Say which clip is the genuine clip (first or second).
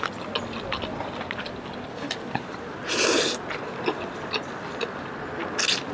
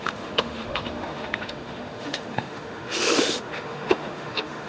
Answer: first